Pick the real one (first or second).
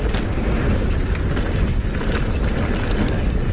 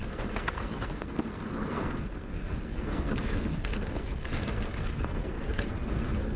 first